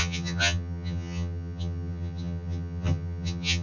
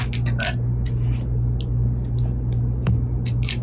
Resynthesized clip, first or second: first